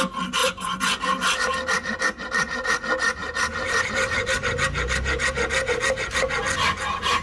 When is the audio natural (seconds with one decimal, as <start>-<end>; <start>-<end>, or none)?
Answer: 0.0-0.4; 1.0-7.2